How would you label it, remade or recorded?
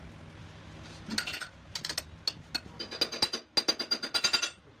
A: recorded